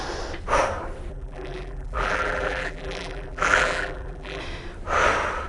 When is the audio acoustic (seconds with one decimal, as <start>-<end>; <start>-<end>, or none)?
0.0-1.1; 4.4-5.5